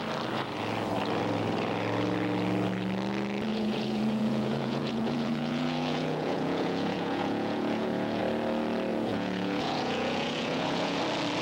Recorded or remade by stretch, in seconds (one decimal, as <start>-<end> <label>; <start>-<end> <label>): 0.0-3.5 recorded; 3.5-8.2 remade; 8.2-8.9 recorded; 8.9-11.0 remade; 11.0-11.4 recorded